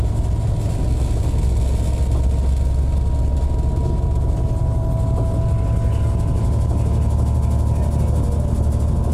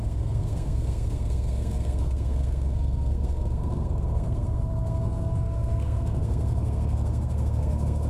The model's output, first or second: second